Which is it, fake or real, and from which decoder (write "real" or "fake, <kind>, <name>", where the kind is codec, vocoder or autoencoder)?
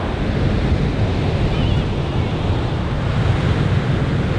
real